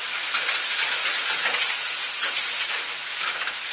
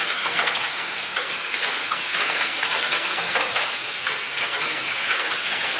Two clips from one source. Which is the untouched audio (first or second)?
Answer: first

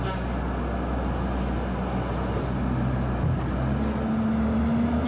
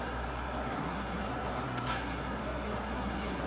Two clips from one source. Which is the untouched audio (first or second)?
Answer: first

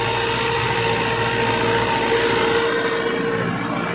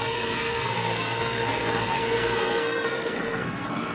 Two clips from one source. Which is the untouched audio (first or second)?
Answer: first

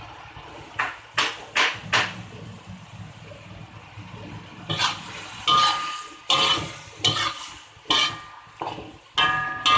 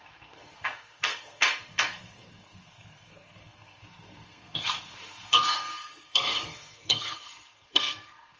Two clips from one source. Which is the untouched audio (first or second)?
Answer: first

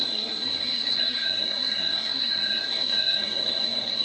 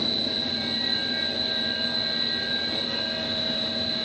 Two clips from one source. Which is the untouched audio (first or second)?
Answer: second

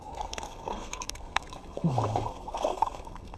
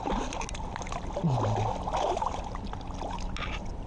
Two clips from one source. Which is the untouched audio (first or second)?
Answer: second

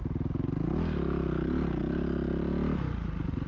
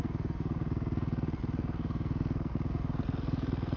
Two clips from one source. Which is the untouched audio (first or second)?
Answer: first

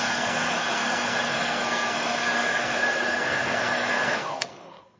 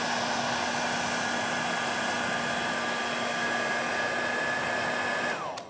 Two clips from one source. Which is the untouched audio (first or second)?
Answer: second